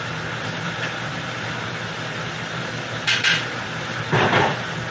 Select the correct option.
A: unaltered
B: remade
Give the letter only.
B